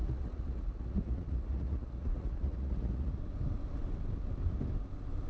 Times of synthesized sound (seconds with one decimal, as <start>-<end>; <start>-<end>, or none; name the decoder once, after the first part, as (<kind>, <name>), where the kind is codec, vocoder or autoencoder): 0.0-3.2 (vocoder, Vocos)